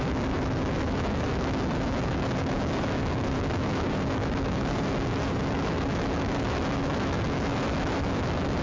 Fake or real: fake